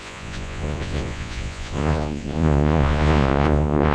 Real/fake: fake